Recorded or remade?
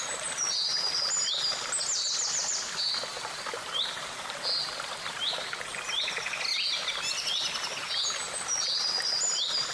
recorded